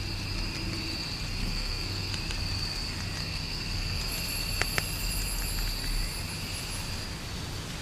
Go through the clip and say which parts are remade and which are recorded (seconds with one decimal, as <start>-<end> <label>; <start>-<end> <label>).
0.0-1.4 recorded; 1.4-2.1 remade; 2.1-3.2 recorded; 3.2-4.0 remade; 4.0-7.8 recorded